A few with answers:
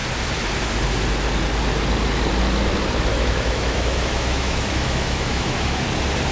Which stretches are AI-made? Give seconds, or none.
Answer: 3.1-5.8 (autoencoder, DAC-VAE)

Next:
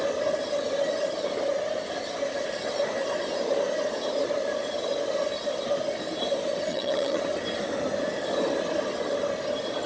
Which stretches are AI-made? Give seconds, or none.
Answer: 6.7-7.2 (vocoder, HiFi-GAN)